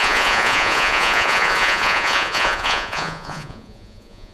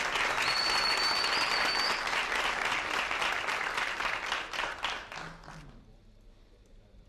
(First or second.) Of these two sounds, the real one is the second